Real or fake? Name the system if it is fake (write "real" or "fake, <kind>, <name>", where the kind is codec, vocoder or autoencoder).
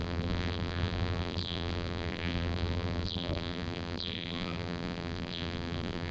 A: fake, vocoder, BigVGAN v2